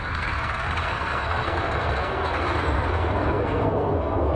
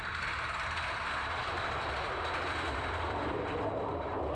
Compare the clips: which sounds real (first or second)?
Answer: second